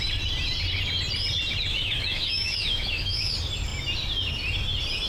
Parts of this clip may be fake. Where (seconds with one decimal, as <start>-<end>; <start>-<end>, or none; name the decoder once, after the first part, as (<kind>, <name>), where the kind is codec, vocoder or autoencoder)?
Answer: 1.7-3.3 (autoencoder, DAC-VAE)